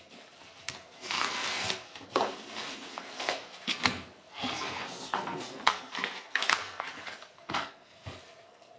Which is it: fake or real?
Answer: fake